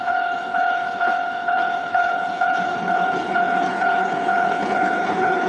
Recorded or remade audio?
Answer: remade